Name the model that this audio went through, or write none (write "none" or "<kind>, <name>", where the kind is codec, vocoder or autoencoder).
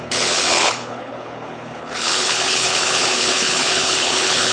codec, HILCodec